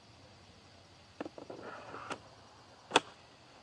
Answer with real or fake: real